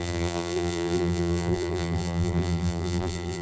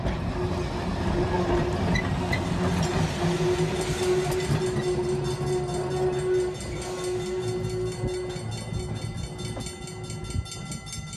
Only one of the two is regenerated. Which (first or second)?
first